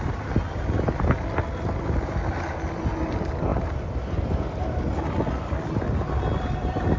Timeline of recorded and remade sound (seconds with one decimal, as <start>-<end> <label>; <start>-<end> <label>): 0.0-7.0 recorded